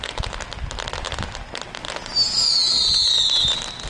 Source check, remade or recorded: recorded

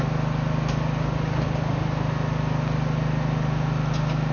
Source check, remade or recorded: recorded